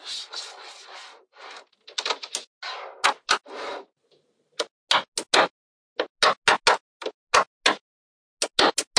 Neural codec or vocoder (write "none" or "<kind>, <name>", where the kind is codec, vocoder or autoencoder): none